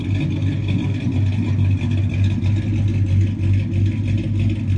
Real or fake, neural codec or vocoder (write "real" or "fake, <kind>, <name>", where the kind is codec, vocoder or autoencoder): real